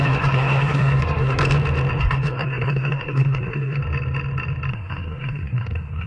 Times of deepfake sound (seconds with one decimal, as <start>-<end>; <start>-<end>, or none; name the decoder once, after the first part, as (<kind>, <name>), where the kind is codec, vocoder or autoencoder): 0.0-1.4 (codec, SNAC); 2.0-3.8; 4.7-6.1